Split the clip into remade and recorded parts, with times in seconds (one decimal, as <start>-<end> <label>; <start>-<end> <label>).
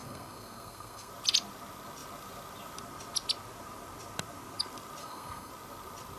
0.0-1.1 remade; 1.1-5.0 recorded; 5.0-5.5 remade; 5.5-6.2 recorded